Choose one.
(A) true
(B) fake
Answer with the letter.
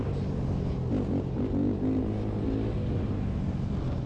A